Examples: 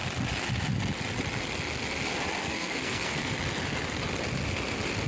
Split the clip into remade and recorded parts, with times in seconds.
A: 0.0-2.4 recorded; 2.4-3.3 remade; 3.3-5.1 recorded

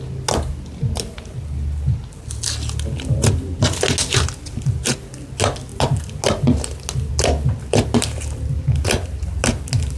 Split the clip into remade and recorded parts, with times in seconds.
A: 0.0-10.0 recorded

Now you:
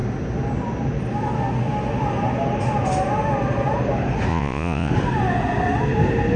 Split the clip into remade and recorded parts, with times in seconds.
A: 0.0-4.3 recorded; 4.3-4.9 remade; 4.9-6.4 recorded

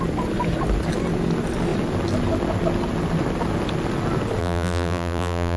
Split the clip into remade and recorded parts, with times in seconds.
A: 0.0-4.4 recorded; 4.4-5.6 remade

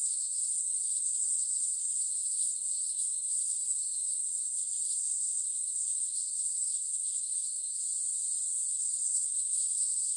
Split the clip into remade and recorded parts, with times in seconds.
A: 0.0-7.8 remade; 7.8-8.7 recorded; 8.7-10.2 remade

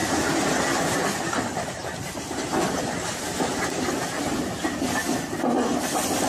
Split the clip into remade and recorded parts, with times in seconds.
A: 0.0-3.8 remade; 3.8-6.3 recorded